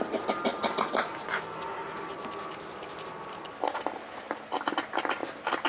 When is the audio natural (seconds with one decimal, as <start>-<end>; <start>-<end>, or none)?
0.0-5.7